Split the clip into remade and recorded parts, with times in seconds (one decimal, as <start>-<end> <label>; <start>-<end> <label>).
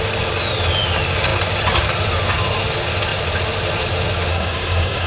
0.0-4.3 recorded; 4.3-5.1 remade